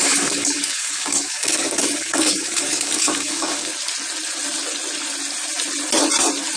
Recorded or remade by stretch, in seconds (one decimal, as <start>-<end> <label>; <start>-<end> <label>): 0.0-3.7 remade; 3.7-6.6 recorded